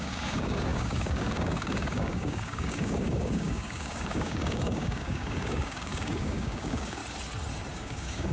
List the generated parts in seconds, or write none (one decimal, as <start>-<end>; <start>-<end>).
0.0-7.0; 7.7-8.3